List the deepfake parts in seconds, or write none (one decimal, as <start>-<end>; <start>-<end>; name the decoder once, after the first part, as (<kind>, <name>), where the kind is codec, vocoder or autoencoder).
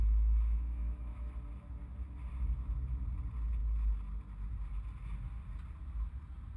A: 0.0-1.3 (autoencoder, DAC-VAE)